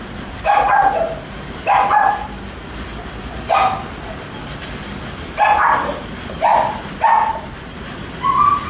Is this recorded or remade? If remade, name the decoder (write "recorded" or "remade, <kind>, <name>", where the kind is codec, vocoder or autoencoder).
recorded